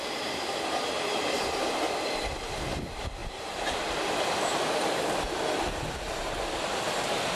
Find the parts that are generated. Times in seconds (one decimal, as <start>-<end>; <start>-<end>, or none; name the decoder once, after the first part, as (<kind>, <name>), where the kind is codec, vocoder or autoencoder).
3.2-3.9 (vocoder, BigVGAN v2); 4.5-5.2